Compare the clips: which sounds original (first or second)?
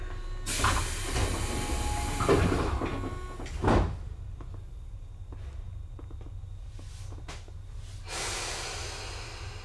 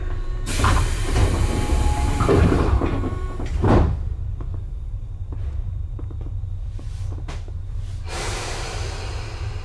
first